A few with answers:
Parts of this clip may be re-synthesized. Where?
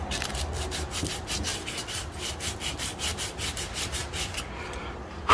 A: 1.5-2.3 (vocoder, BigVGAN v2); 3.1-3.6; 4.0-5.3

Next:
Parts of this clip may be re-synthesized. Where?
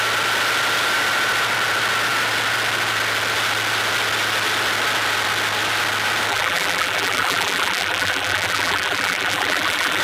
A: 6.3-10.0 (vocoder, BigVGAN v2)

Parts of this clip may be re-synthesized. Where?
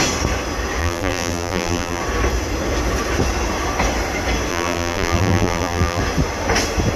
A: 0.8-2.0 (vocoder, BigVGAN v2); 4.5-6.0